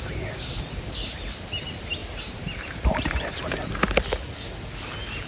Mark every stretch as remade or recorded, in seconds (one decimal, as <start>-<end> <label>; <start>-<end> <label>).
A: 0.0-2.0 recorded; 2.0-3.4 remade; 3.4-5.3 recorded